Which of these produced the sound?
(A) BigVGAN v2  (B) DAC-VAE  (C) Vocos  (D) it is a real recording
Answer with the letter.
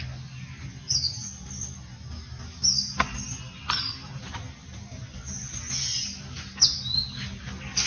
D